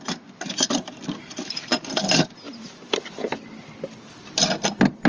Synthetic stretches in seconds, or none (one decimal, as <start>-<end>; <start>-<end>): none